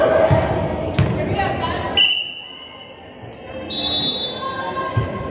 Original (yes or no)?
yes